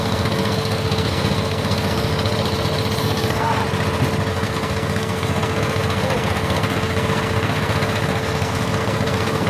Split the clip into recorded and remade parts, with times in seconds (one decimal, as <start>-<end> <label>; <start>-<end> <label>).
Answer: 0.0-2.1 remade; 2.1-3.0 recorded; 3.0-3.6 remade; 3.6-4.3 recorded; 4.3-9.5 remade